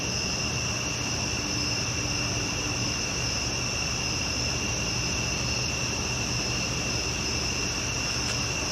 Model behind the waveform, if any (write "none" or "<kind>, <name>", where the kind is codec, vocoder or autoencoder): none